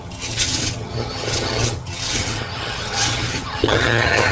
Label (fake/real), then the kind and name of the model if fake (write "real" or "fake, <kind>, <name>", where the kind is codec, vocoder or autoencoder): fake, vocoder, HiFi-GAN